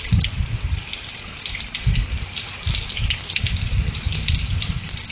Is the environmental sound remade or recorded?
recorded